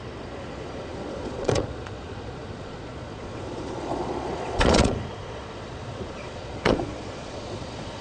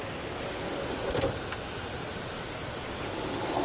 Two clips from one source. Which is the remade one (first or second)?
first